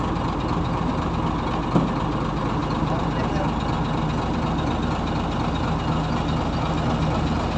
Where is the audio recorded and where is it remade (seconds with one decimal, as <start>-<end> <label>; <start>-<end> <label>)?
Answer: 0.0-7.6 recorded